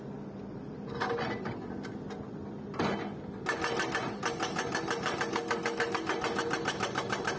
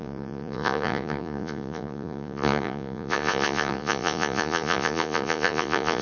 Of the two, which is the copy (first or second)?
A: second